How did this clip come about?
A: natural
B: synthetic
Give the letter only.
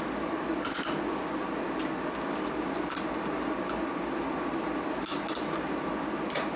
A